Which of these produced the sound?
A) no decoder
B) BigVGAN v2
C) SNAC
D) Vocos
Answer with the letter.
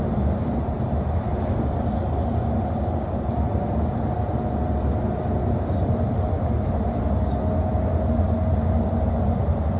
A